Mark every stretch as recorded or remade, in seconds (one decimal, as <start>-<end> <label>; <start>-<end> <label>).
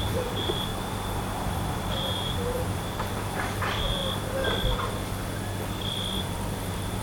0.0-0.7 remade; 0.7-1.5 recorded; 1.5-4.0 remade; 4.0-6.2 recorded; 6.2-7.0 remade